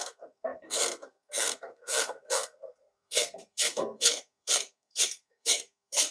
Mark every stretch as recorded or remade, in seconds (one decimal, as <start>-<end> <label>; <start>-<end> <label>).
0.0-6.1 remade